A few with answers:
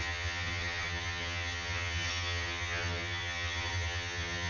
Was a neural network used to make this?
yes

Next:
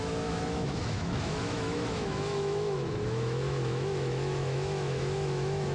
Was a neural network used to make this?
yes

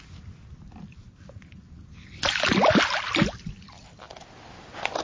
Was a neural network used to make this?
no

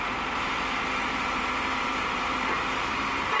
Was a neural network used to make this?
yes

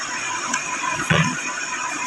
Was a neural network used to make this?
yes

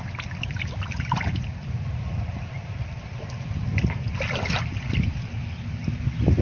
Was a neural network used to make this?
no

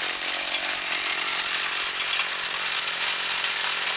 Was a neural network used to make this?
no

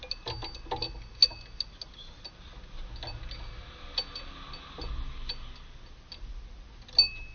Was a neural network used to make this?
no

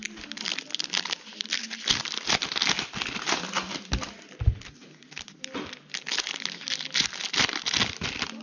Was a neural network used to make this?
no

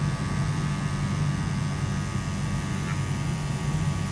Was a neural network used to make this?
no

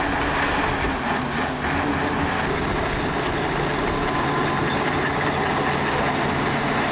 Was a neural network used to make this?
no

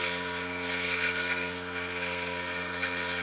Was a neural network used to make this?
yes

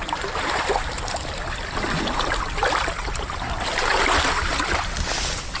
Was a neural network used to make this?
no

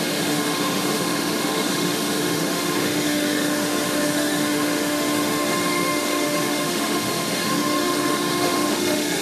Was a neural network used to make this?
yes